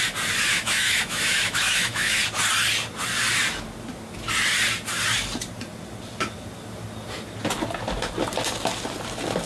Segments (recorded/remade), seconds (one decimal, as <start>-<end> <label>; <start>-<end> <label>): 0.0-0.5 recorded; 0.5-2.2 remade; 2.2-9.5 recorded